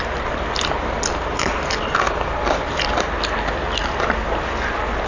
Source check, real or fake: real